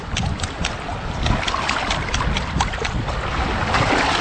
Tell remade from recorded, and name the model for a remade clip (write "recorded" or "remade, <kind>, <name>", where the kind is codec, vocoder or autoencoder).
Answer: recorded